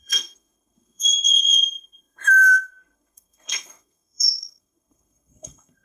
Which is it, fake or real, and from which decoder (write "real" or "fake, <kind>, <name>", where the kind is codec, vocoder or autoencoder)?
fake, codec, SNAC